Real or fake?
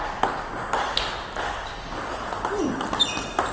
real